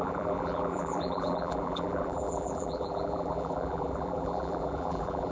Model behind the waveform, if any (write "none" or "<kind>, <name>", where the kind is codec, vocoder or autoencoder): vocoder, BigVGAN v2